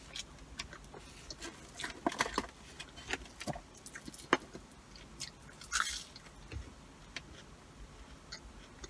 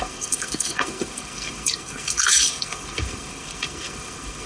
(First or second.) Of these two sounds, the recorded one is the first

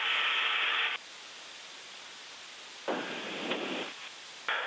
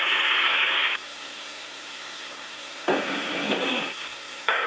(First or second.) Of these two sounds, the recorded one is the first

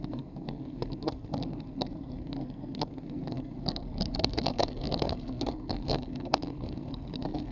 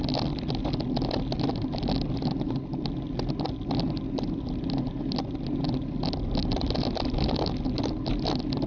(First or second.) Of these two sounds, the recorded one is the second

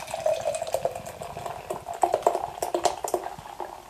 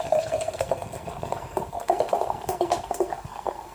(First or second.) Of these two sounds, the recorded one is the first